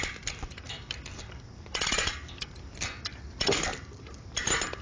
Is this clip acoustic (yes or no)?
yes